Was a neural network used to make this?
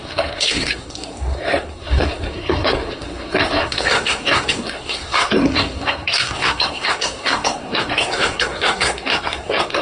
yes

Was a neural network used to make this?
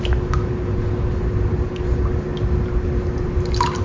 no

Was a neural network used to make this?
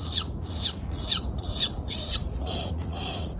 yes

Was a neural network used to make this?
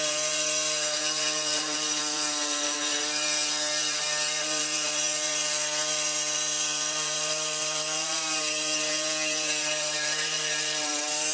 yes